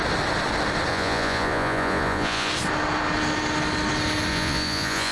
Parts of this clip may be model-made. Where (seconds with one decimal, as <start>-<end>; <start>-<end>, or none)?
0.9-2.5; 4.3-5.1